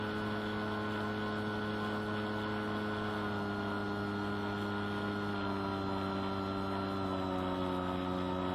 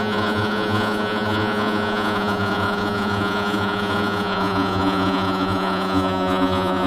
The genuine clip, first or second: first